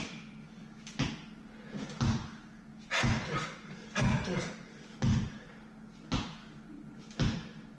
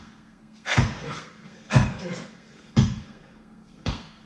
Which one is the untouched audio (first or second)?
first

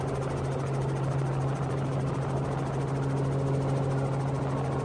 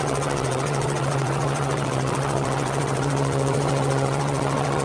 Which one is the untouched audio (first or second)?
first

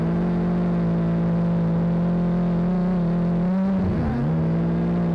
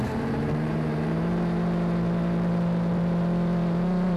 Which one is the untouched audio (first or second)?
first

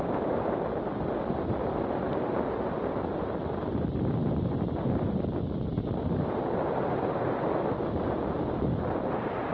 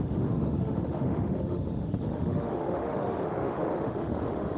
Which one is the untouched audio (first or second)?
first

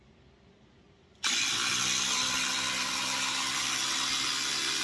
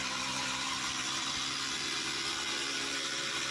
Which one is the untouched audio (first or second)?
first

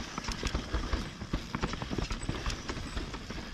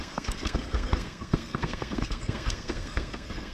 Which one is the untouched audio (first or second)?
first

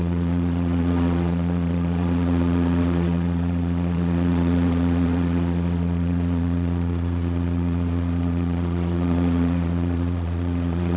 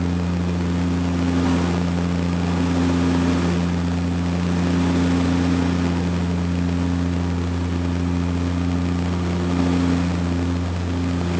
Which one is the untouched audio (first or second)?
second